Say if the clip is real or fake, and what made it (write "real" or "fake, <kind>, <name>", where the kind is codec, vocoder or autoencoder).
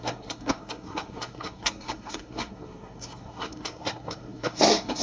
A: fake, codec, SNAC